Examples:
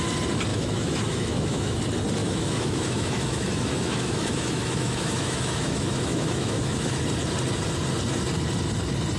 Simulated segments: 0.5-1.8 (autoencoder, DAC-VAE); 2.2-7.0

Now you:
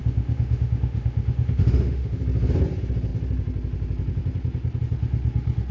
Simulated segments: 0.0-2.2 (autoencoder, DAC-VAE)

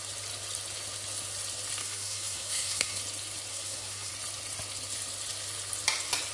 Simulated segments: 1.8-3.0 (codec, SNAC); 3.5-4.1

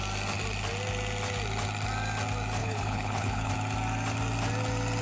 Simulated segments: 2.6-3.5 (codec, HILCodec)